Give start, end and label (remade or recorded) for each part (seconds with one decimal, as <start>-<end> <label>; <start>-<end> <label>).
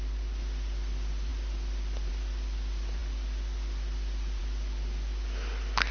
0.0-5.9 recorded